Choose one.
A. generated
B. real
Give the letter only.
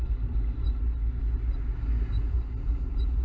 B